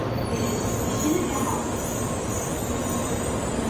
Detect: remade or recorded remade